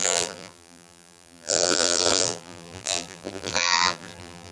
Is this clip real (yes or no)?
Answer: no